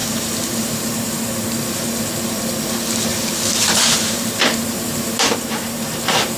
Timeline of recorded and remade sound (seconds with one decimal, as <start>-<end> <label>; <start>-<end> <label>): 0.0-1.1 remade; 1.1-3.1 recorded; 3.1-6.4 remade